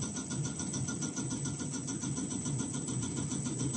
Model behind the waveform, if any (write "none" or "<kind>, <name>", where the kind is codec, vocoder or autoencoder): vocoder, Vocos